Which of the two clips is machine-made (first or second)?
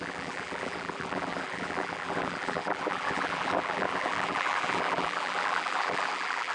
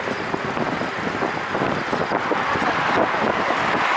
first